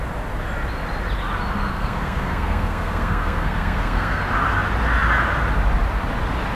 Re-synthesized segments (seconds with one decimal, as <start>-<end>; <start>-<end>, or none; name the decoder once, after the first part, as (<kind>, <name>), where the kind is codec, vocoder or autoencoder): 1.7-4.2 (codec, SNAC)